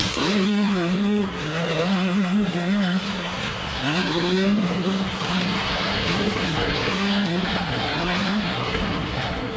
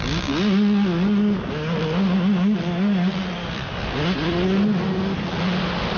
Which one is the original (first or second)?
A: second